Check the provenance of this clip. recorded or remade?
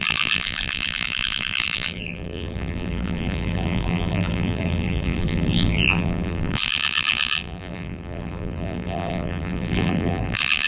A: remade